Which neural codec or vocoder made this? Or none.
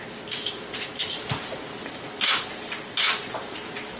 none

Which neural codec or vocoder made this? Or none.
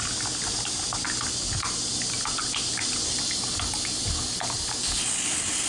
none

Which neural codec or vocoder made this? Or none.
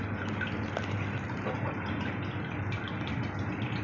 none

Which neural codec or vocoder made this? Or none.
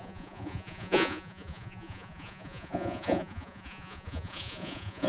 vocoder, Vocos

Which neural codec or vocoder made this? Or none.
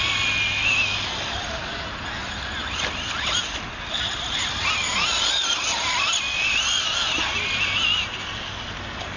none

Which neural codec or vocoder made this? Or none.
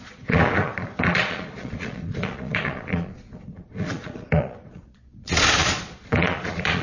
vocoder, Vocos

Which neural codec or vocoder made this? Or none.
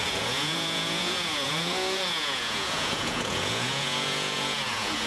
vocoder, Vocos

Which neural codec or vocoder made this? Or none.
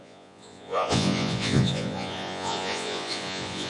vocoder, Vocos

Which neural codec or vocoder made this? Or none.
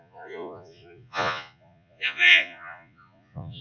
vocoder, Vocos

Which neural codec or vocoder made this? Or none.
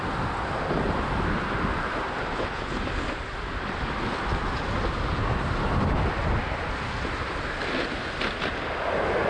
none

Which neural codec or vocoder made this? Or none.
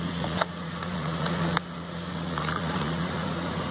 vocoder, Vocos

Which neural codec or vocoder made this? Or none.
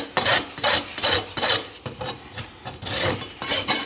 none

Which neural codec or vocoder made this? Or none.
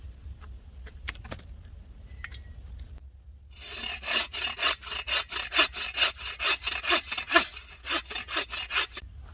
none